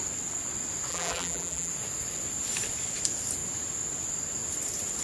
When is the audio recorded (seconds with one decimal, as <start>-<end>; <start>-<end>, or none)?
0.0-0.9; 1.7-5.0